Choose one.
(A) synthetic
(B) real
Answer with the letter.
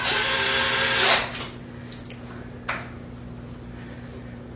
B